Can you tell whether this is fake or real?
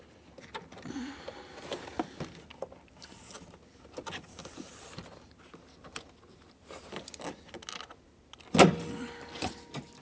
real